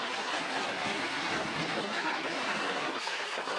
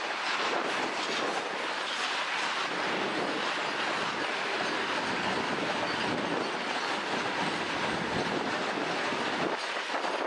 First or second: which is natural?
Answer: second